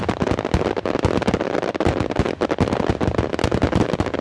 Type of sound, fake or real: real